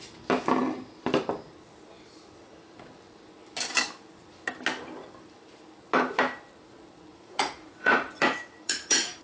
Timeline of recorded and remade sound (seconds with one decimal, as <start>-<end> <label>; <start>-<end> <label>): 0.0-7.1 recorded; 7.1-9.2 remade